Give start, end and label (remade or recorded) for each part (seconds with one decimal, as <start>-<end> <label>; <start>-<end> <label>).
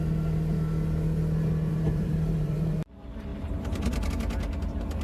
0.0-1.7 recorded; 1.7-2.7 remade; 2.7-3.3 recorded; 3.3-4.1 remade; 4.1-5.0 recorded